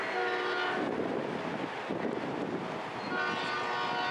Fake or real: real